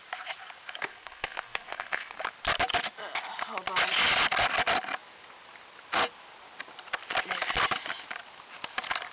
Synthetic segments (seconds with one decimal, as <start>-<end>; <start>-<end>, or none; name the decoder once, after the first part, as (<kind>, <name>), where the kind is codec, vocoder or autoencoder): 0.9-2.2 (codec, SNAC)